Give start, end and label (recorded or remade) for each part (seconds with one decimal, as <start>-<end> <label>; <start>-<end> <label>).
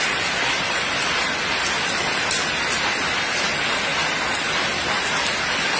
0.0-5.8 recorded